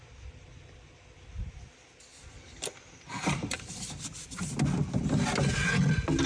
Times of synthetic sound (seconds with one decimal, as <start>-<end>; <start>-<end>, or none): 2.1-4.5